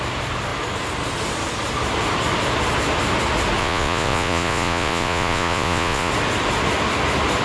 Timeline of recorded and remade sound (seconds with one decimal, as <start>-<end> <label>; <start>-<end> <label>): 0.0-3.6 recorded; 3.6-6.1 remade; 6.1-7.4 recorded